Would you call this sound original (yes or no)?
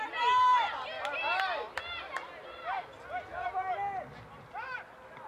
yes